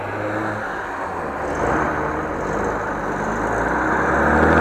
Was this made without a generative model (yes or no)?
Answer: yes